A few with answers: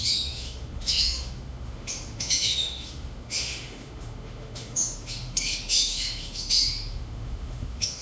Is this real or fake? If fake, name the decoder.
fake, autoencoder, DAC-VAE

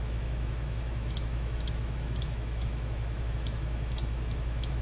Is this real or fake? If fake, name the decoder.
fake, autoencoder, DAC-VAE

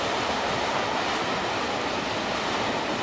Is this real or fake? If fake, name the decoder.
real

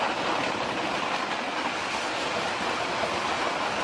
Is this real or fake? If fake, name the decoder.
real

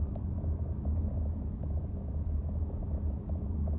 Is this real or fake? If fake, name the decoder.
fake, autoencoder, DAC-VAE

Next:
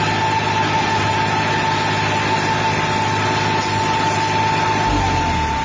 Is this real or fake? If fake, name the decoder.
real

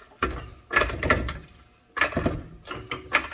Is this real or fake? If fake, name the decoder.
real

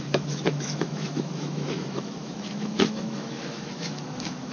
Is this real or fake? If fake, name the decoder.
fake, autoencoder, DAC-VAE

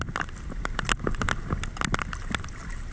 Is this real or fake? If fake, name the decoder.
real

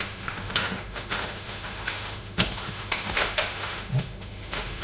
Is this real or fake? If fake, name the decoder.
fake, autoencoder, DAC-VAE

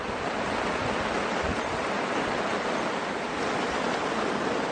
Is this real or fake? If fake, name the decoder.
real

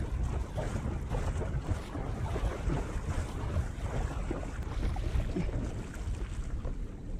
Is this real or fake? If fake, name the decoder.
real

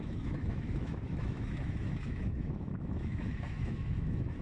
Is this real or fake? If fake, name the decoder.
fake, autoencoder, DAC-VAE